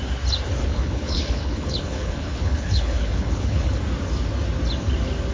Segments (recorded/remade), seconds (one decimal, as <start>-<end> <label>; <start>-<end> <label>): 0.0-0.6 recorded; 0.6-3.8 remade; 3.8-5.3 recorded